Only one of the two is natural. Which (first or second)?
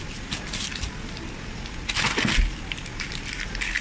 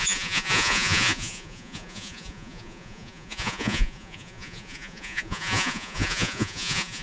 first